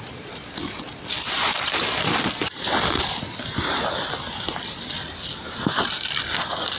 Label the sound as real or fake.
real